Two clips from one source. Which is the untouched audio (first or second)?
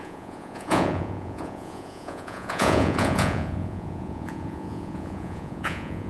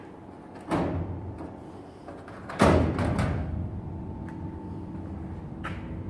second